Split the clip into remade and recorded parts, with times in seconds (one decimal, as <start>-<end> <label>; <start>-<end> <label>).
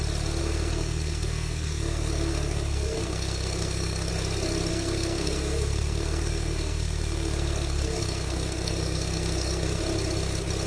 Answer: 0.0-0.4 recorded; 0.4-4.1 remade; 4.1-4.7 recorded; 4.7-9.8 remade; 9.8-10.7 recorded